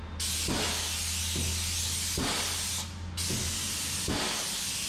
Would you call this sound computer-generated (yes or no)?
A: no